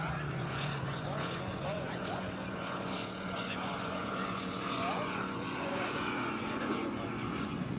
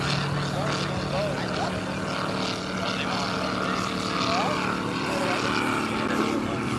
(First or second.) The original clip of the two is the second